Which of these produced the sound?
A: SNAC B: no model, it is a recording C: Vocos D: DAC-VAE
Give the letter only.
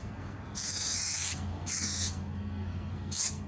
A